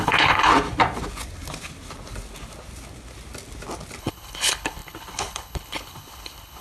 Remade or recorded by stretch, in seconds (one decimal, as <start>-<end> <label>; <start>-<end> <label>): 0.0-0.5 remade; 0.5-4.0 recorded; 4.0-6.6 remade